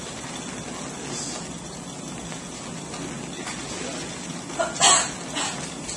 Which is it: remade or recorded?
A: recorded